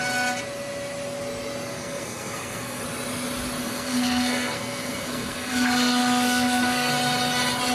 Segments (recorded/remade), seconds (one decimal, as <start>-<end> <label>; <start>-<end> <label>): 0.0-1.7 recorded; 1.7-2.8 remade; 2.8-3.6 recorded; 3.6-6.9 remade; 6.9-7.7 recorded